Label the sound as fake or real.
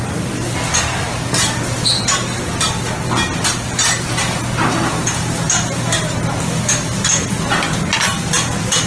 real